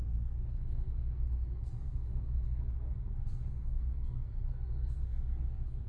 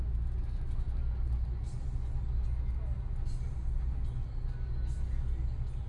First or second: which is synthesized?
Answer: first